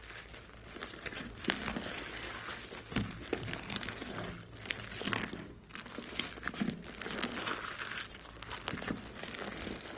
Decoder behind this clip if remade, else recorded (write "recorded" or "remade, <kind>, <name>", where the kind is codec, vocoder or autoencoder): recorded